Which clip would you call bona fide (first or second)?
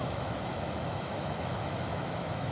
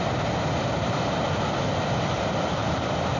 second